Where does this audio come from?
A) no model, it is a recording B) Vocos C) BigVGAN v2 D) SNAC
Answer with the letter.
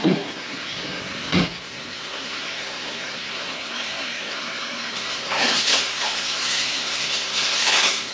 D